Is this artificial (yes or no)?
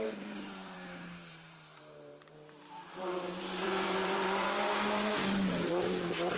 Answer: yes